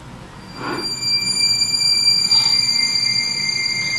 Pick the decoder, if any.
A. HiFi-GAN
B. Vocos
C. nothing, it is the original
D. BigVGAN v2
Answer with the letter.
C